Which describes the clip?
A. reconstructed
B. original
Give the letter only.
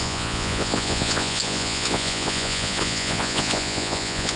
A